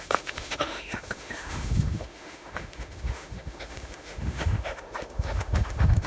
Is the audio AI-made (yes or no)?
yes